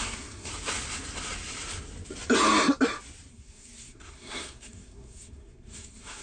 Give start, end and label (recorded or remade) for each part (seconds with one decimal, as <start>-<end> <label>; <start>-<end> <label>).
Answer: 0.0-0.5 remade; 0.5-3.3 recorded; 3.3-6.2 remade

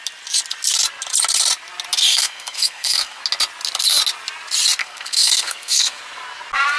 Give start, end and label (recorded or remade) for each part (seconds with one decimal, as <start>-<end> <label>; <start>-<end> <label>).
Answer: 0.0-2.1 recorded; 2.1-3.2 remade; 3.2-4.8 recorded; 4.8-6.0 remade; 6.0-6.8 recorded

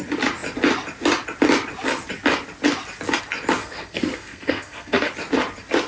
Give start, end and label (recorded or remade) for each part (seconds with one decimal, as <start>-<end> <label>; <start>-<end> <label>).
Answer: 0.0-3.6 recorded; 3.6-5.1 remade; 5.1-5.9 recorded

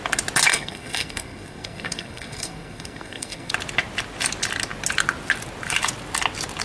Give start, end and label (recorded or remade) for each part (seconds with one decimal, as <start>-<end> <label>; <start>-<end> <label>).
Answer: 0.0-0.5 recorded; 0.5-3.5 remade; 3.5-6.6 recorded

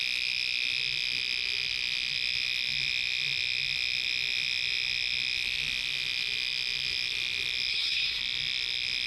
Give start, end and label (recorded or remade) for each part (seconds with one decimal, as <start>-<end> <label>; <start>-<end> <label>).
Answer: 0.0-7.7 recorded; 7.7-8.2 remade; 8.2-9.1 recorded